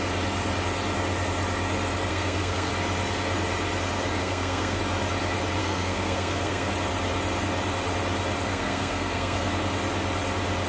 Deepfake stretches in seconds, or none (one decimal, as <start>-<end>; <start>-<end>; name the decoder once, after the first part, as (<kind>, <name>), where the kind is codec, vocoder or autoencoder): 2.1-2.7 (codec, SNAC); 4.2-4.8; 5.6-6.7; 8.5-9.5